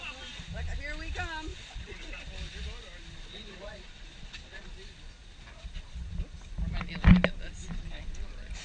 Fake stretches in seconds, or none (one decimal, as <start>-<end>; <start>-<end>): 1.5-2.2; 3.3-4.7